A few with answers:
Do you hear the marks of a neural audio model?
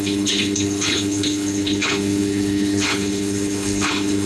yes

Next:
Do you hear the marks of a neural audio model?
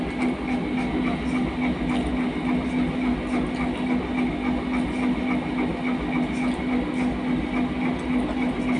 no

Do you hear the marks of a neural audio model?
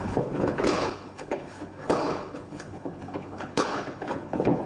yes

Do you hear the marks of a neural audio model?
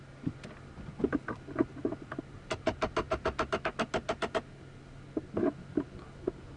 no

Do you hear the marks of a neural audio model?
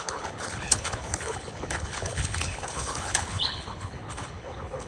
yes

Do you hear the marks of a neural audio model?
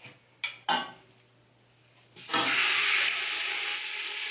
no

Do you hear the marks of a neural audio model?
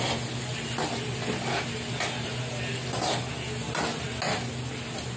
no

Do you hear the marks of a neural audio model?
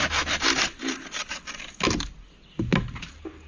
no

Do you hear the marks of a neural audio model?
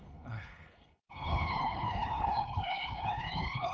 yes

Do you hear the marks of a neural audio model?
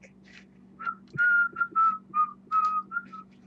no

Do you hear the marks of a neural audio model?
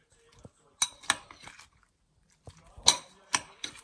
no